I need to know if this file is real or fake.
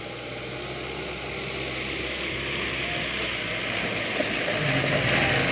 real